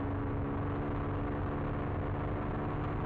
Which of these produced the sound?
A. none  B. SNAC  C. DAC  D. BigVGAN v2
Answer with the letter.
A